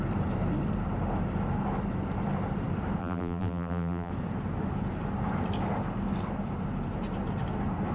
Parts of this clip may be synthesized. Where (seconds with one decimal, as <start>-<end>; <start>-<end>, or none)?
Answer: 3.0-4.1